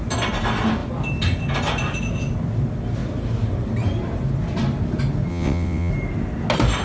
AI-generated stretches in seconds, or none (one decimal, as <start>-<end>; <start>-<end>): 5.3-5.9